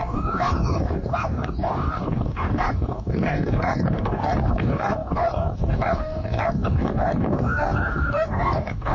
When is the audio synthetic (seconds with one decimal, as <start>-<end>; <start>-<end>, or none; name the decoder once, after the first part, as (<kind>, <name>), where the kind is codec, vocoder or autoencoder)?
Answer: 0.0-8.9 (codec, DAC)